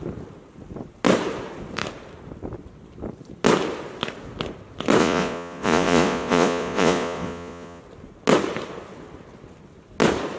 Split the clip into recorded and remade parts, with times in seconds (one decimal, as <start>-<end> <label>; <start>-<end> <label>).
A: 0.0-5.0 recorded; 5.0-7.8 remade; 7.8-10.4 recorded